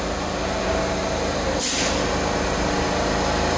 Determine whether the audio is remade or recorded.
recorded